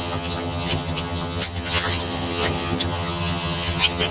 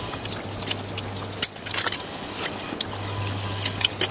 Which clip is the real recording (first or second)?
second